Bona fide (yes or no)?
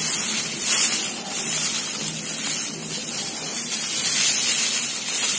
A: yes